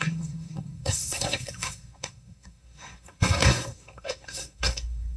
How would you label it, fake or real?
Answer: fake